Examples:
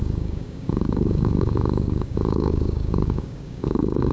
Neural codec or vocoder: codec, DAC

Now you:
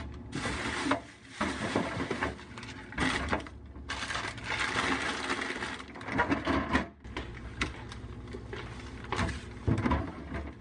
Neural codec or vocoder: none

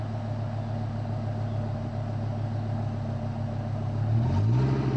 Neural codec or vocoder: none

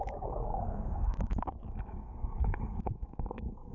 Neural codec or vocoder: codec, DAC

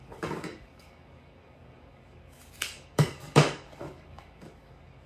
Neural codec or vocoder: codec, DAC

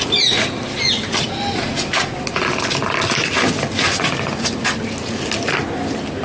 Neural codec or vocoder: none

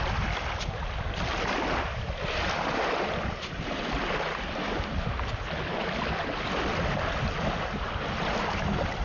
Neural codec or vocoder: none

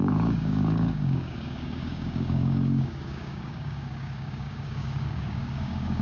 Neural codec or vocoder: codec, DAC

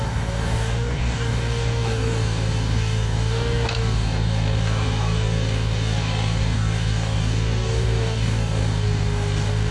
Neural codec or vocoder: codec, DAC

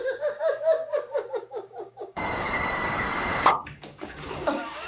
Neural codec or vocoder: codec, DAC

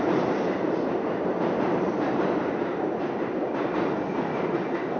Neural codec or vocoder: none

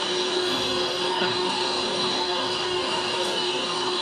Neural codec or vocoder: codec, DAC